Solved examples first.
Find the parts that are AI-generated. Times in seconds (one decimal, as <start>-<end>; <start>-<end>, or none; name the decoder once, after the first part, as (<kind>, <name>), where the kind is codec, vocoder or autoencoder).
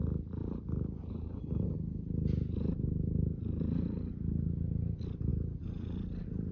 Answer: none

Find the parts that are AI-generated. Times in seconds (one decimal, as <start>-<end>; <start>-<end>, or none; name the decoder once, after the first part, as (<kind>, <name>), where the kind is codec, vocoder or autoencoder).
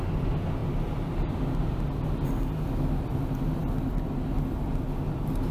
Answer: none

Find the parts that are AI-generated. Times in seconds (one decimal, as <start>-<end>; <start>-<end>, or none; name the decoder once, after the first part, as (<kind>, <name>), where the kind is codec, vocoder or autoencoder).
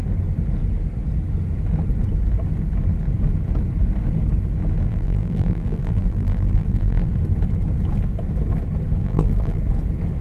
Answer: 4.9-7.1 (vocoder, BigVGAN v2); 9.0-9.6